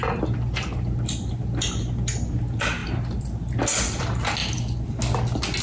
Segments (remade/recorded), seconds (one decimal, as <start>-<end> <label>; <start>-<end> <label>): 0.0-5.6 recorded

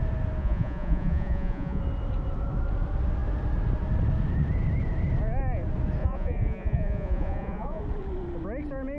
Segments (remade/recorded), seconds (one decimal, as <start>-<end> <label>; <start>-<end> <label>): 0.0-0.4 recorded; 0.4-1.8 remade; 1.8-6.0 recorded; 6.0-7.8 remade; 7.8-9.0 recorded

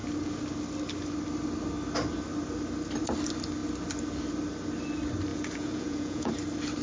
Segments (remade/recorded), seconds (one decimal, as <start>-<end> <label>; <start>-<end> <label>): 0.0-5.3 recorded; 5.3-6.3 remade; 6.3-6.8 recorded

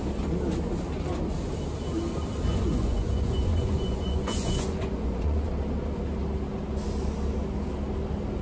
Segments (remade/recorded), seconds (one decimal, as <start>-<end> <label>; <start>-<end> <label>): 0.0-2.5 recorded; 2.5-5.5 remade; 5.5-8.4 recorded

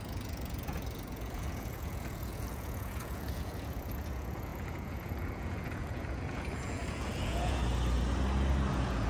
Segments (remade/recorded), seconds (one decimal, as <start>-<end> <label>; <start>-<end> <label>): 0.0-7.6 remade; 7.6-8.7 recorded; 8.7-9.1 remade

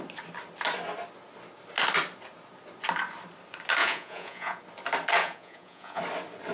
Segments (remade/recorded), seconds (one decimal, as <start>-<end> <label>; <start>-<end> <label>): 0.0-3.8 recorded; 3.8-4.6 remade; 4.6-5.2 recorded; 5.2-6.0 remade; 6.0-6.5 recorded